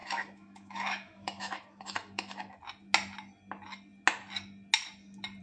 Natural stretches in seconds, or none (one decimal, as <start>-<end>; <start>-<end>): 2.6-5.4